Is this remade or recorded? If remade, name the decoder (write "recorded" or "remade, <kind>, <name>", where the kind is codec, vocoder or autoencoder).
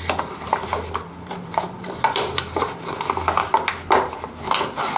recorded